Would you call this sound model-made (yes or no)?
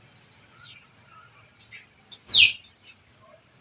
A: no